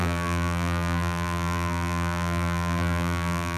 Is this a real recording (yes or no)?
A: no